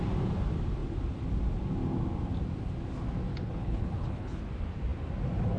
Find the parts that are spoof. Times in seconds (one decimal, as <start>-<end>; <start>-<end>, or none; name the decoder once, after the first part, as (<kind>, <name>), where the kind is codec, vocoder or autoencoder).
3.3-4.4 (codec, HILCodec)